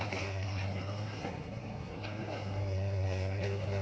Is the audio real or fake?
fake